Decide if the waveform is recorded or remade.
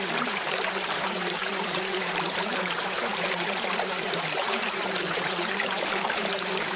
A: remade